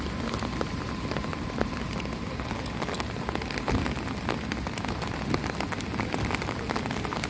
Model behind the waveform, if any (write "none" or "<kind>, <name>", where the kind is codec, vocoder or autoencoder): none